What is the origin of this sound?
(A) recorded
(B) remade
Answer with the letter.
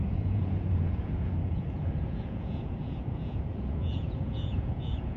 B